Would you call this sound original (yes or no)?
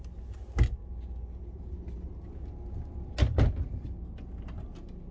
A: yes